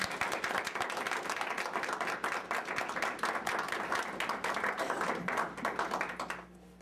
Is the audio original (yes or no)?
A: yes